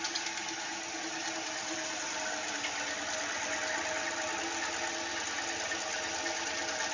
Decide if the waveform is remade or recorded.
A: recorded